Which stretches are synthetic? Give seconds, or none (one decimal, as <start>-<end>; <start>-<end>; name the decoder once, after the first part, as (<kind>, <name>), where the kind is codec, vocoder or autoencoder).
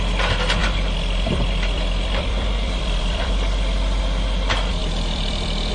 0.6-4.0 (vocoder, BigVGAN v2); 4.8-5.7